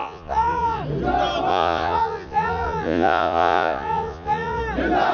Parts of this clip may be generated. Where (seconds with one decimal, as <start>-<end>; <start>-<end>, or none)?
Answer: 0.0-0.8; 1.5-4.6

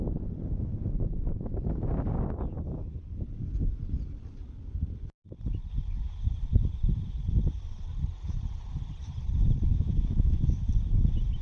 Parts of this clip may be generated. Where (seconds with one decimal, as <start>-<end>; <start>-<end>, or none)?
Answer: 9.7-10.6